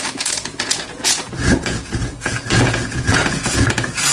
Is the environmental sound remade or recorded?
remade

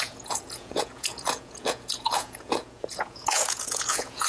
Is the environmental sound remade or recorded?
remade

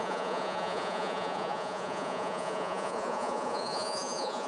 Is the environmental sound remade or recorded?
remade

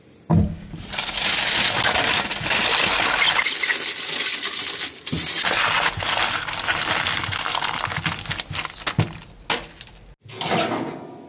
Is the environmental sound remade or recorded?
recorded